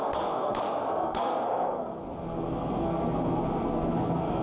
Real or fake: fake